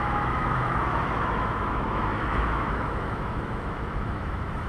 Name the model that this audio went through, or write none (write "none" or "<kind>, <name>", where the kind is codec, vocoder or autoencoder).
autoencoder, DAC-VAE